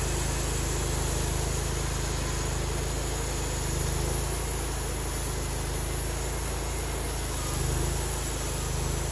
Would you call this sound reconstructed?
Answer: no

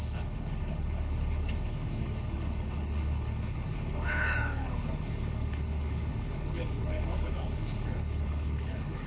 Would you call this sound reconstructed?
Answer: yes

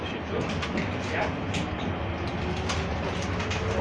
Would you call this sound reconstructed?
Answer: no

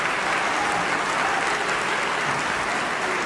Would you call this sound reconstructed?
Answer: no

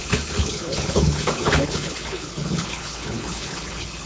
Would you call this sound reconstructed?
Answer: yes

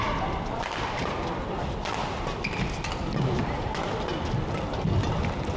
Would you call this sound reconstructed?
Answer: no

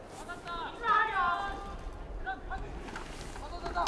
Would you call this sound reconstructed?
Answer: no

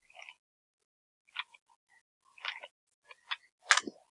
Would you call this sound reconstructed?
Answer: no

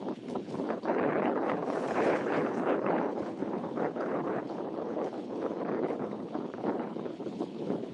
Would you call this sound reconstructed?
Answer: yes